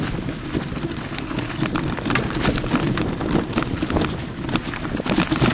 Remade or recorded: recorded